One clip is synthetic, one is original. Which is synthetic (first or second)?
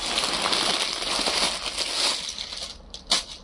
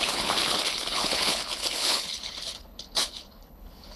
second